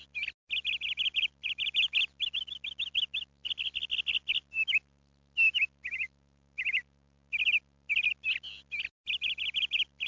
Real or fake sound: real